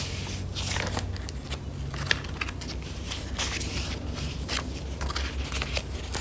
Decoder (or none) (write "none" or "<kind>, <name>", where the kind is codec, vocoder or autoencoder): none